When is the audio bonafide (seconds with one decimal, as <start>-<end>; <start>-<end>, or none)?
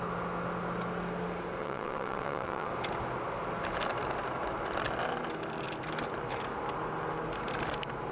0.0-1.6; 2.7-8.1